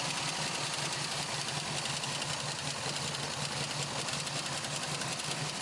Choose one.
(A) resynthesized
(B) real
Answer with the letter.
B